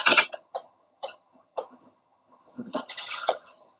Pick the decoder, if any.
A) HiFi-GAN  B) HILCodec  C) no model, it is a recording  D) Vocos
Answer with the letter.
A